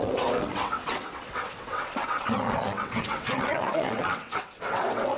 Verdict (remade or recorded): remade